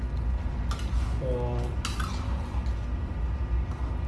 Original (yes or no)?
yes